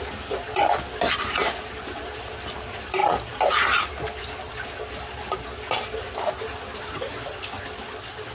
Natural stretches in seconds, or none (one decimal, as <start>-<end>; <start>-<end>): 0.0-8.3